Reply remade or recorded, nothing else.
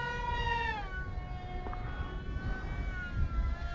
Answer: recorded